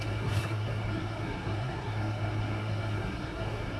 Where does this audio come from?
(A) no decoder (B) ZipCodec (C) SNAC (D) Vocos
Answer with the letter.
C